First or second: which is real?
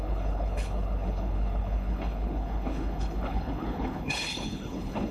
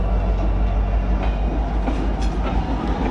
second